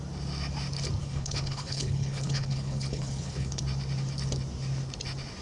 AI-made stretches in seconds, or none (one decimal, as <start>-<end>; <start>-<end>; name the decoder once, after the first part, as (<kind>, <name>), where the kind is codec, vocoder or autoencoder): 1.0-3.6 (codec, HILCodec)